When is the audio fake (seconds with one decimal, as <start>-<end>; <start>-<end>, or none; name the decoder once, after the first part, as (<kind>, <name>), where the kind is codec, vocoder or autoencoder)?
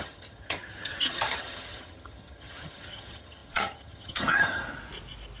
0.0-4.6 (vocoder, HiFi-GAN)